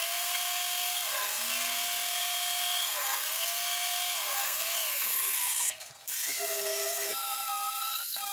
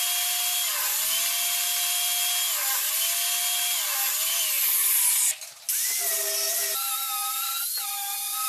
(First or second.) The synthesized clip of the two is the first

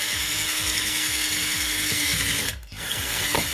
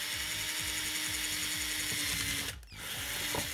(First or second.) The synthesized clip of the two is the first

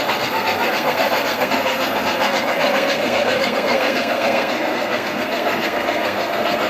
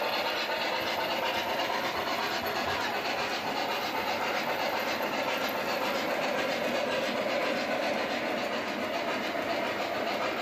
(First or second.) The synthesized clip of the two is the first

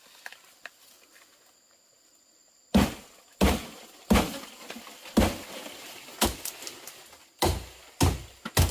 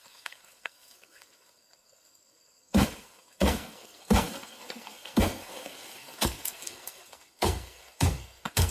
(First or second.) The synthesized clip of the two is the second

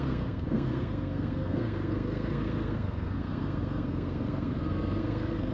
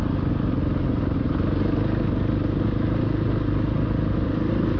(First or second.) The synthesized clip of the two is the first